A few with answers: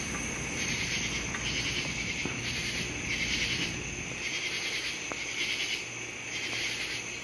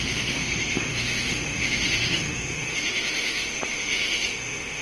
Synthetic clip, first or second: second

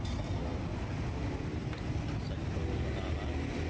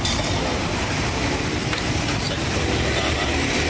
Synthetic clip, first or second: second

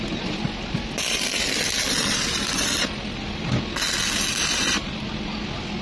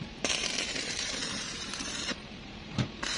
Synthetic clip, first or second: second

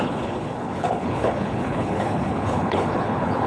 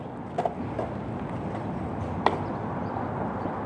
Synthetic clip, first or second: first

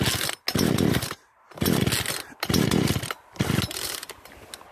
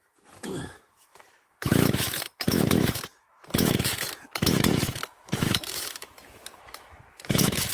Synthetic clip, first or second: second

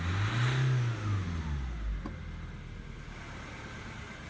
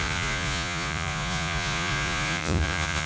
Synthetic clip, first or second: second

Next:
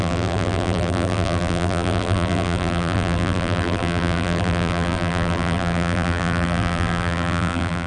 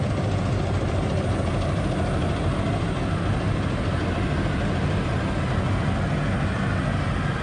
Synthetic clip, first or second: first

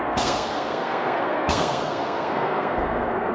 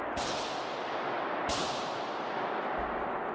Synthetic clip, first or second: first